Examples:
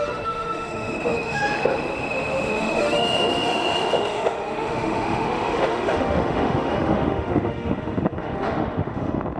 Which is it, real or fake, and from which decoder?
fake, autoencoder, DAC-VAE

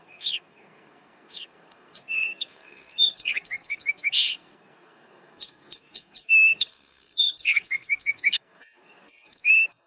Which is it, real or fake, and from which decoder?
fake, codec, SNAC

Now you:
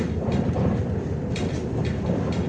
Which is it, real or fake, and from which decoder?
fake, vocoder, BigVGAN v2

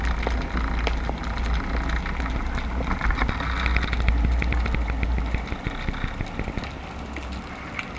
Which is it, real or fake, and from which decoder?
real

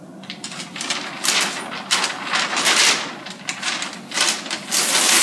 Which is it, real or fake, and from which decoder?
real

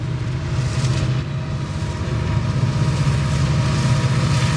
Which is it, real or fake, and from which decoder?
fake, vocoder, BigVGAN v2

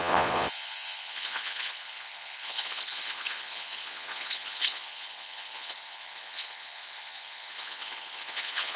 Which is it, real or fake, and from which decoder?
fake, vocoder, Vocos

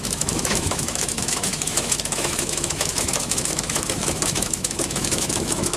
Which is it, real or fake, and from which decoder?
fake, autoencoder, DAC-VAE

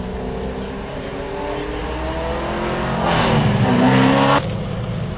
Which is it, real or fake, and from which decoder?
real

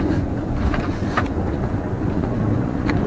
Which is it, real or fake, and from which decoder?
fake, vocoder, Vocos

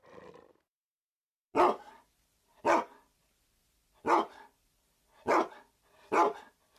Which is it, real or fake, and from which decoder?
real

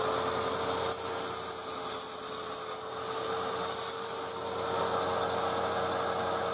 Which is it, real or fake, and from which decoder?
real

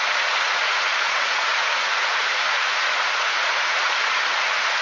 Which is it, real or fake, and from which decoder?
fake, vocoder, Vocos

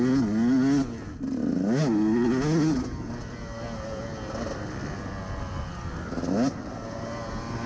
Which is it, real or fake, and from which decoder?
real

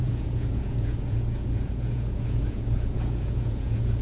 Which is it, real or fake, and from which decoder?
fake, vocoder, Vocos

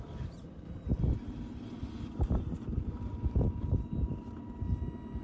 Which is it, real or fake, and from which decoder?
real